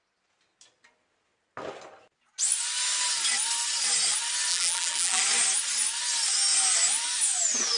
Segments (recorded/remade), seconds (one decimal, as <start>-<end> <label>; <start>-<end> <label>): 0.0-4.5 recorded; 4.5-5.2 remade; 5.2-7.8 recorded